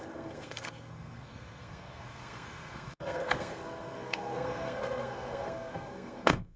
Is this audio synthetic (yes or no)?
yes